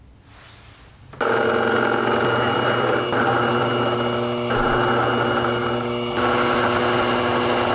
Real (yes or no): yes